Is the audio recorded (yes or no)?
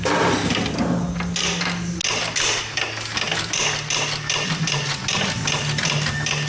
yes